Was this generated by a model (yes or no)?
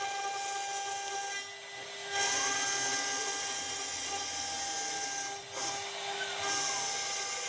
no